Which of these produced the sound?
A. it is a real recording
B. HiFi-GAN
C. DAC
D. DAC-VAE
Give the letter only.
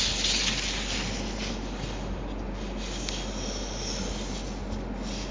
A